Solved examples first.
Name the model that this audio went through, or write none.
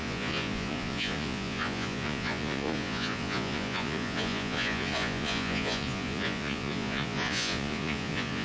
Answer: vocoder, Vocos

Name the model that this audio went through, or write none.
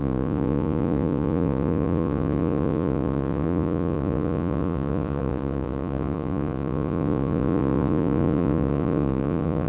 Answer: vocoder, Vocos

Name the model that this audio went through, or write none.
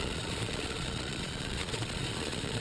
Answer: vocoder, Vocos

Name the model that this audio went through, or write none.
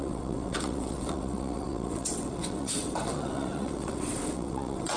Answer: vocoder, WaveNeXt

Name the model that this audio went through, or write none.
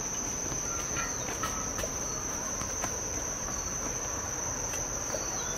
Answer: vocoder, BigVGAN v2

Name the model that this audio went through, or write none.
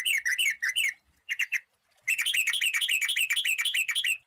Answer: vocoder, Vocos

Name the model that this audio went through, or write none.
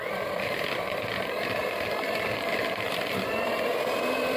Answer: vocoder, BigVGAN v2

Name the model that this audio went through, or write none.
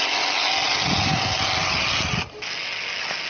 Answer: none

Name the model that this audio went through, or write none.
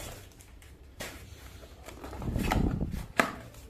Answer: vocoder, BigVGAN v2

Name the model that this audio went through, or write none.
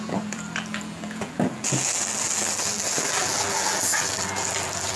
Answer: vocoder, BigVGAN v2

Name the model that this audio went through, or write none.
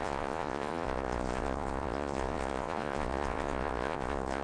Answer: vocoder, Vocos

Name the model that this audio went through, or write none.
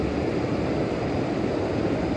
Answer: none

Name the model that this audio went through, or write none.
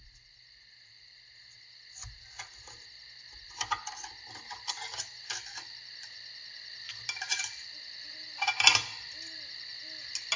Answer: none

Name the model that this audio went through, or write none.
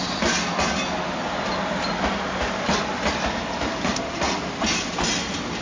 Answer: none